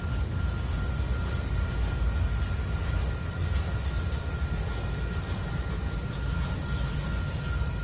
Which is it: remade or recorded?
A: recorded